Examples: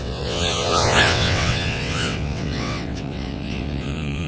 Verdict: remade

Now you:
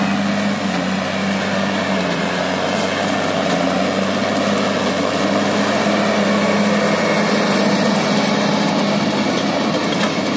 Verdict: recorded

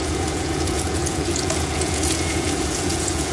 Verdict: remade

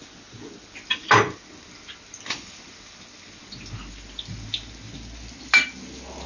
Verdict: recorded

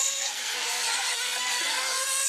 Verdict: remade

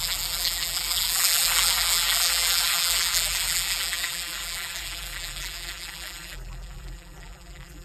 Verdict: remade